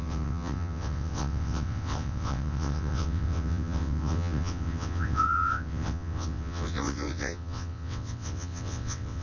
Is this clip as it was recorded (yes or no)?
no